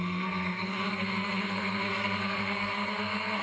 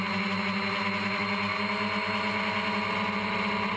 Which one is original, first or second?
second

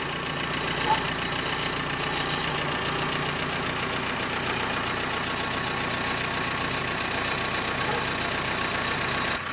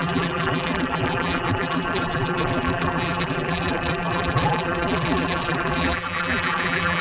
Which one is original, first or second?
first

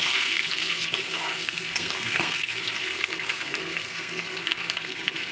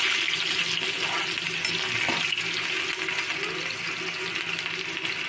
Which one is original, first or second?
second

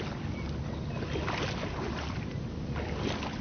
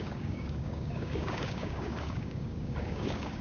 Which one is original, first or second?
first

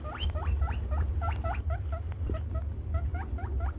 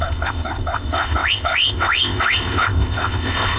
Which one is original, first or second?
first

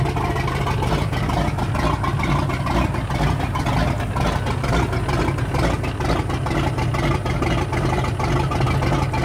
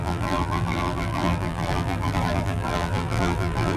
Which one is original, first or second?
first